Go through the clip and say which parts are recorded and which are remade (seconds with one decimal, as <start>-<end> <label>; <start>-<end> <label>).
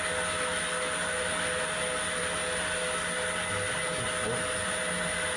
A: 0.0-5.4 recorded